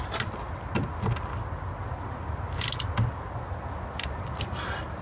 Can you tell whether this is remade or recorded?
recorded